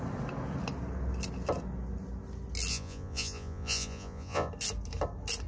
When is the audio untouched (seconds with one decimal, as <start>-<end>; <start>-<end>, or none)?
0.0-2.7; 4.5-5.5